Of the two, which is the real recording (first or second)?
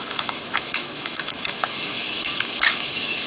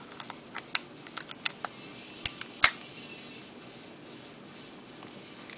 second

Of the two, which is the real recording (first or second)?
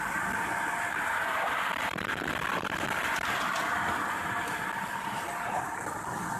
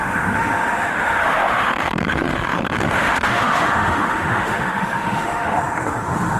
first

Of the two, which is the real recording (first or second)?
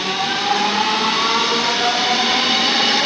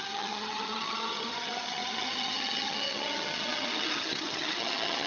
first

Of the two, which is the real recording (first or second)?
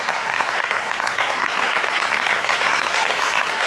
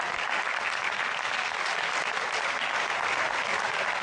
second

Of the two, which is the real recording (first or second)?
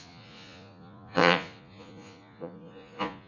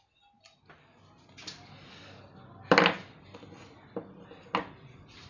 second